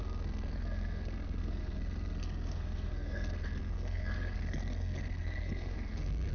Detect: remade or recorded remade